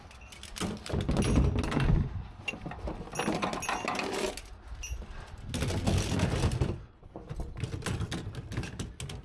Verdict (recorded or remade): recorded